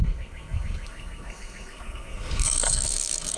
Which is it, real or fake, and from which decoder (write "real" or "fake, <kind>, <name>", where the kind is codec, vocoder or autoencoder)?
fake, codec, SNAC